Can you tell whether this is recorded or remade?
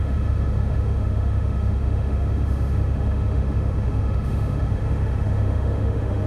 remade